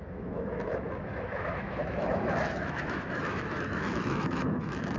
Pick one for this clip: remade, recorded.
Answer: remade